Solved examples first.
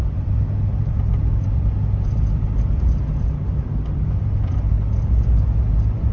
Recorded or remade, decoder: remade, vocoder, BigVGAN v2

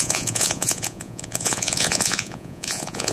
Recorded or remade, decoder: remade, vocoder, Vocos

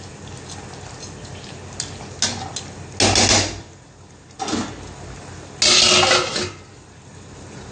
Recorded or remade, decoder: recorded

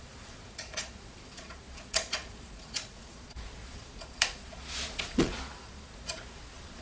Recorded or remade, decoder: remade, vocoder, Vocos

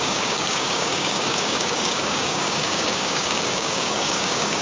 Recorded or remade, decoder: remade, codec, DAC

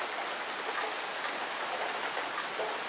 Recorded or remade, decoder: recorded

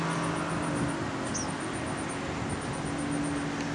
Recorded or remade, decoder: recorded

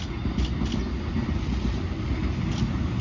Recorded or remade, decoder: recorded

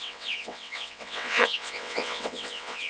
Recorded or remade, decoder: remade, vocoder, WaveNeXt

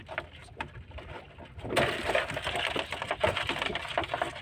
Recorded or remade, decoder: recorded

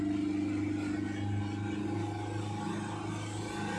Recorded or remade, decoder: recorded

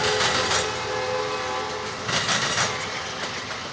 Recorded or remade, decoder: recorded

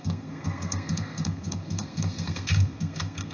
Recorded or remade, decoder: remade, codec, SNAC